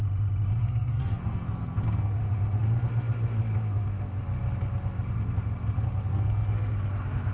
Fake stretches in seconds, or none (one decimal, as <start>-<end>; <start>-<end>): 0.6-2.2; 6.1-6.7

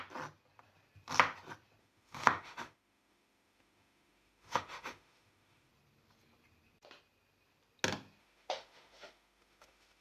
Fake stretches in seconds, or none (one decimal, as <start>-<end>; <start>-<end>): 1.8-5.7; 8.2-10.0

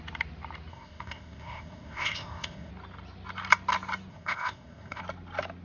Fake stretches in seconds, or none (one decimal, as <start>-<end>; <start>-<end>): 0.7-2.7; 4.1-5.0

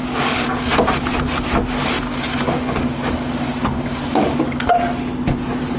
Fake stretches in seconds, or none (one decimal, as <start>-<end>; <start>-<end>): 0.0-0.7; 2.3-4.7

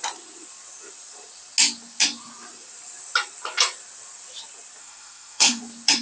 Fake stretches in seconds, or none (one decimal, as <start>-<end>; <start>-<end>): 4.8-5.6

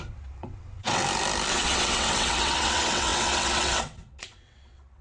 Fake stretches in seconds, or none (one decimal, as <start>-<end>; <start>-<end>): 0.0-1.0; 1.5-5.0

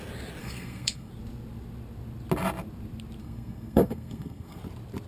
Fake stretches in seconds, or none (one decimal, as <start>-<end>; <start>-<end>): 0.4-1.1; 3.2-4.6

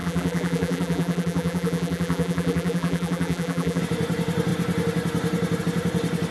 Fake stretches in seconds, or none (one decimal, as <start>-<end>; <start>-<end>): 0.0-3.8